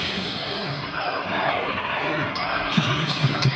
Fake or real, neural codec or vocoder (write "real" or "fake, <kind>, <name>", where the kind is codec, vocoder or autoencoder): fake, codec, SNAC